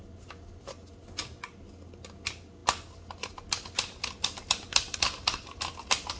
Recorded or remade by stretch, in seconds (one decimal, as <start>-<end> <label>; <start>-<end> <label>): 0.0-6.2 recorded